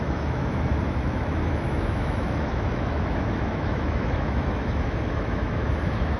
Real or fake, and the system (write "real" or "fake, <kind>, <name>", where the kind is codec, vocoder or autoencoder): fake, autoencoder, DAC-VAE